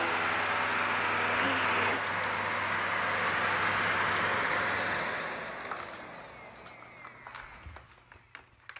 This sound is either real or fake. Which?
real